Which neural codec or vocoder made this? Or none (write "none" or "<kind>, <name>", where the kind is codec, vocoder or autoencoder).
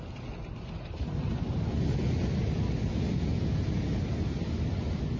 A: none